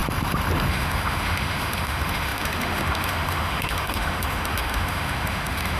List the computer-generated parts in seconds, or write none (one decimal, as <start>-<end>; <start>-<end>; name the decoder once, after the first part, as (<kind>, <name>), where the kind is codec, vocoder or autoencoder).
0.7-5.8 (autoencoder, DAC-VAE)